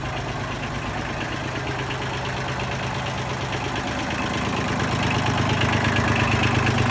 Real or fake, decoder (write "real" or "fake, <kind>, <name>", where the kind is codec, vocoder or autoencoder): real